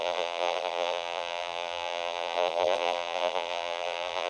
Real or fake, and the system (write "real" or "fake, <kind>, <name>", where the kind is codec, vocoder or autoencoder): fake, vocoder, BigVGAN v2